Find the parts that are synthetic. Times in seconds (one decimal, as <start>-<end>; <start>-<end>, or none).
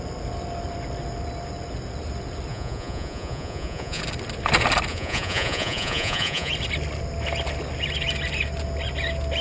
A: 2.5-4.0; 4.9-6.5